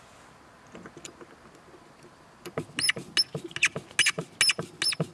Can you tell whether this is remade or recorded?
recorded